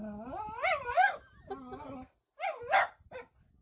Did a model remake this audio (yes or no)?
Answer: no